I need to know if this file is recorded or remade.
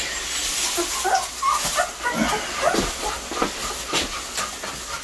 recorded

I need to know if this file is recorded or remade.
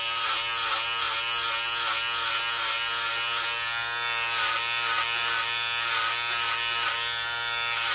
recorded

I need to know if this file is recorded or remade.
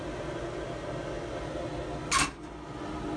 recorded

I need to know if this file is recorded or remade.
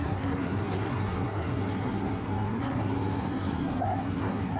remade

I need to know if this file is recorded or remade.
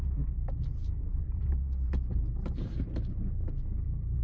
remade